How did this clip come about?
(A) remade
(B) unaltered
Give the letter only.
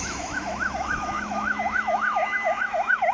A